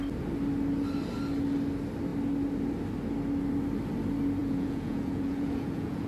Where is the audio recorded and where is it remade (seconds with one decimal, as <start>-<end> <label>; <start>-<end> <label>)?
0.0-4.4 recorded; 4.4-6.1 remade